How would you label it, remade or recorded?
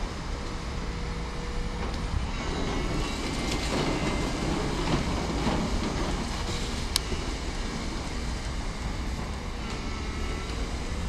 recorded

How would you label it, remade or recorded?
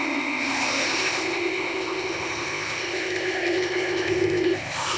remade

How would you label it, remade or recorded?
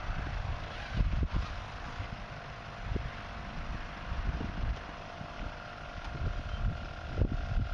recorded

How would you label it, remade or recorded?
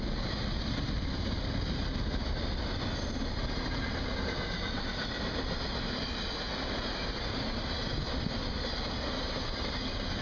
recorded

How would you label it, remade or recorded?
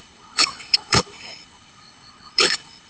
remade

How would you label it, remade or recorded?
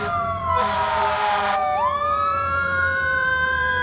remade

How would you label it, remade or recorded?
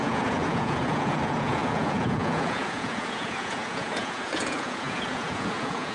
remade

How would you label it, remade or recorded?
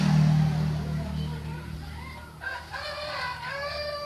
recorded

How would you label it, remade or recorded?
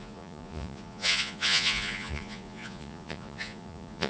remade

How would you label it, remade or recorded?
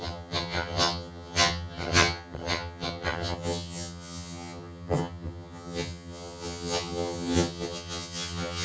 remade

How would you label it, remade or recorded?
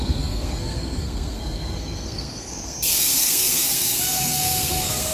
remade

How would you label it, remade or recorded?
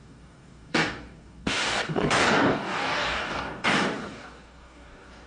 remade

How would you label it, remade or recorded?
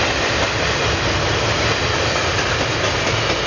recorded